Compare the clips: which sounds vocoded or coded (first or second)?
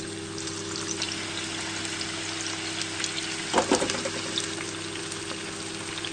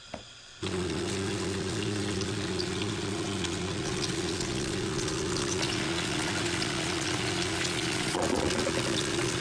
second